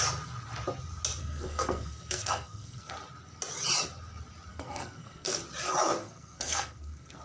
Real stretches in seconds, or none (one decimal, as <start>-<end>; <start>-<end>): 0.0-1.2; 2.9-4.5; 5.4-6.0